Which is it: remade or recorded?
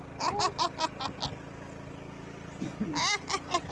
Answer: recorded